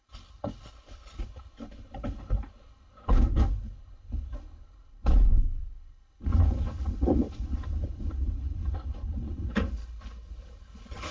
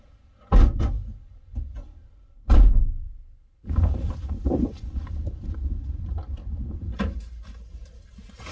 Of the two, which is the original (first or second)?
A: second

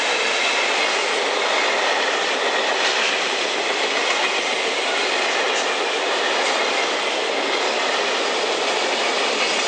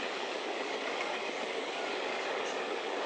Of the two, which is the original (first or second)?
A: first